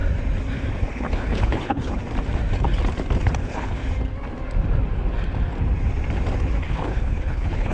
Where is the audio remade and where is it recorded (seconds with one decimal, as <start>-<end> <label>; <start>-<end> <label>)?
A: 0.0-0.9 recorded; 0.9-2.0 remade; 2.0-3.4 recorded; 3.4-3.8 remade; 3.8-6.6 recorded; 6.6-7.7 remade